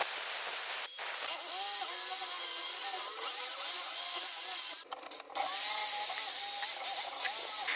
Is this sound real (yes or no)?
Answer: yes